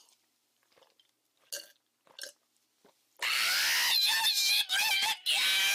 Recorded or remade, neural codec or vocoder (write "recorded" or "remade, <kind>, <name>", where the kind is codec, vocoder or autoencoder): recorded